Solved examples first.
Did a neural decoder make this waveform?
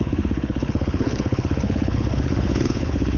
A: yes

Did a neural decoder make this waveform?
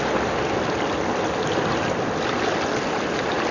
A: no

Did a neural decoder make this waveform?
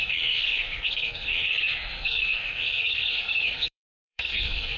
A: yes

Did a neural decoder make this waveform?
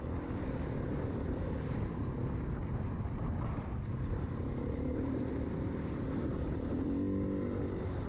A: no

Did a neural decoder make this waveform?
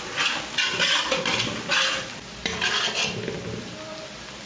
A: no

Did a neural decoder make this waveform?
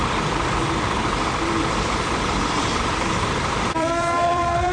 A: yes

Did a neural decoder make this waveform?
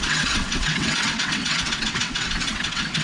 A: yes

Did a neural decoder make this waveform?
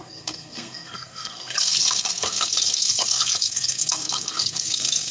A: yes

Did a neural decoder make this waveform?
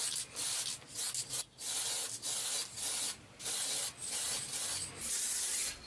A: no